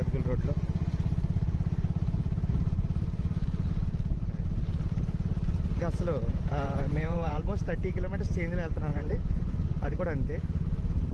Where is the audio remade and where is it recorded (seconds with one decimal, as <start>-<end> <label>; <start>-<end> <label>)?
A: 0.0-6.3 recorded; 6.3-7.6 remade; 7.6-8.9 recorded; 8.9-10.0 remade; 10.0-11.1 recorded